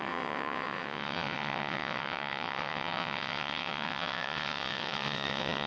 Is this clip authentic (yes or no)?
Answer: no